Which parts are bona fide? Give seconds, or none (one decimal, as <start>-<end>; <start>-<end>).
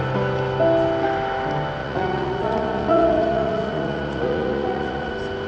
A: 0.0-1.8; 5.1-5.5